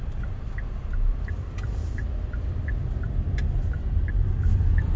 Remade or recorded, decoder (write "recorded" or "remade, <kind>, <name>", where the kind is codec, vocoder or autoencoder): remade, vocoder, BigVGAN v2